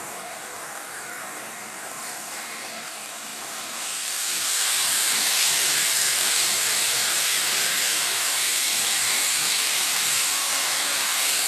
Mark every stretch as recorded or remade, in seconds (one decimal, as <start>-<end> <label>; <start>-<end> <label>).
0.0-11.5 remade